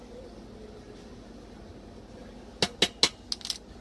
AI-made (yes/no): no